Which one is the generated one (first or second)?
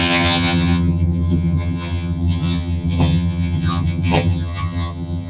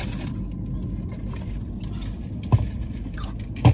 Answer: first